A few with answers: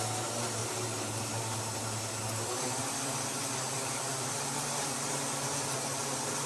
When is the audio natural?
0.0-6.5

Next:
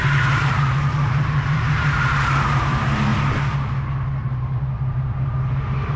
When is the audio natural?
3.1-4.9

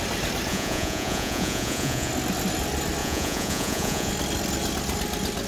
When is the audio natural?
0.0-0.5; 2.1-3.0; 4.1-5.5